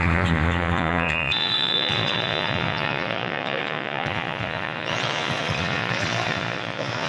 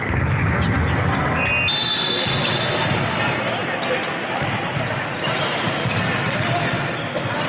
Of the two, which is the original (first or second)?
second